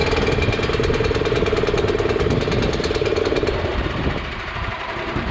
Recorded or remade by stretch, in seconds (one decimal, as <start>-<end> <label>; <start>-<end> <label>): 0.0-3.7 recorded; 3.7-4.7 remade; 4.7-5.3 recorded